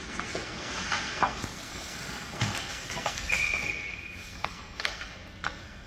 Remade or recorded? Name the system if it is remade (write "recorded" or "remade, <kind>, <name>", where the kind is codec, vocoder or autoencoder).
remade, codec, SNAC